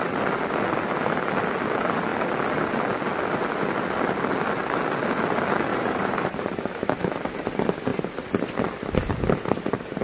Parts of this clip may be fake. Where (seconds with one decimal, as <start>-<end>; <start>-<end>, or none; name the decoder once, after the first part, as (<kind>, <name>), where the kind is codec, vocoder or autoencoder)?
5.7-7.0 (vocoder, BigVGAN v2)